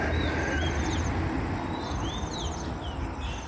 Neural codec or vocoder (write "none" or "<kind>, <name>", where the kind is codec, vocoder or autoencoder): none